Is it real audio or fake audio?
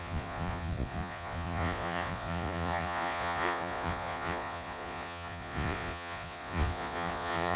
fake